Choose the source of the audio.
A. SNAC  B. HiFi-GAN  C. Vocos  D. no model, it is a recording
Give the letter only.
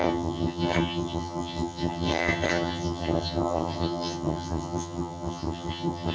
B